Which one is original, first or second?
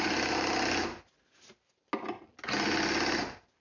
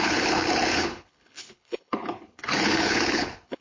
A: first